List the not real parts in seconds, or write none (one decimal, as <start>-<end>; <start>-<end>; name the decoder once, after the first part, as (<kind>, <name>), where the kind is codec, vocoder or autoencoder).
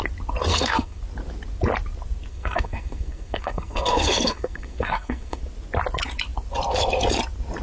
0.5-1.0 (codec, SNAC); 2.3-5.4